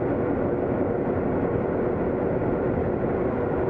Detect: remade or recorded recorded